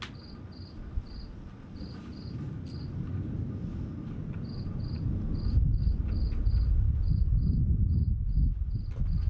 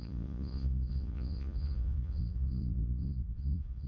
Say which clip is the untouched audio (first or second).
first